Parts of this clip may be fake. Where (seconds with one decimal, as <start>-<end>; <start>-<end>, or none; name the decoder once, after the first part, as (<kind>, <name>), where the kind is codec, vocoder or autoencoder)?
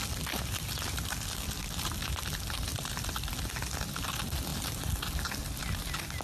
none